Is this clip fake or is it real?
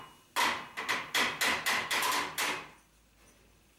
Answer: real